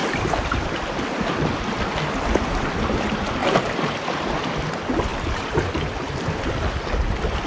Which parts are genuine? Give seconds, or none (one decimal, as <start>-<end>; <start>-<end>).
0.5-3.4; 4.5-5.1; 6.4-7.5